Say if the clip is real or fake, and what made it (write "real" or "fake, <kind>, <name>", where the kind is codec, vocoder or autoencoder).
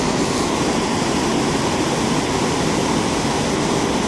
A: real